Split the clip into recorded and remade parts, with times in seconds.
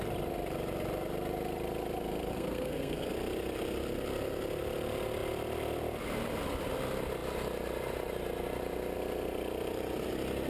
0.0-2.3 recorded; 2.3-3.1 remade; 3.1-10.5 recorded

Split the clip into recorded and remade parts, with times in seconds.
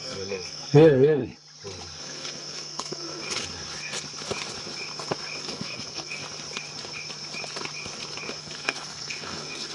0.0-1.2 remade; 1.2-2.0 recorded; 2.0-3.2 remade; 3.2-5.4 recorded; 5.4-6.2 remade; 6.2-8.4 recorded; 8.4-9.7 remade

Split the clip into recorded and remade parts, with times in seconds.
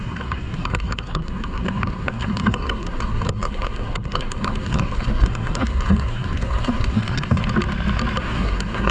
0.0-7.4 remade; 7.4-8.2 recorded; 8.2-8.9 remade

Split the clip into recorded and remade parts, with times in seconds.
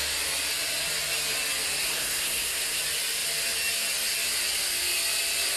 0.0-1.8 recorded; 1.8-2.8 remade; 2.8-5.6 recorded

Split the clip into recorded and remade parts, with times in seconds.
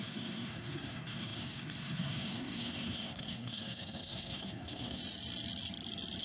0.0-5.0 remade; 5.0-6.2 recorded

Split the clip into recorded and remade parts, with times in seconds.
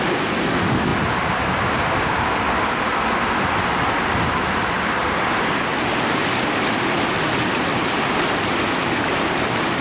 0.0-9.8 recorded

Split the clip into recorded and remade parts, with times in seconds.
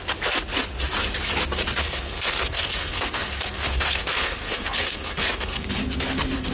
0.0-1.8 recorded; 1.8-5.7 remade; 5.7-6.5 recorded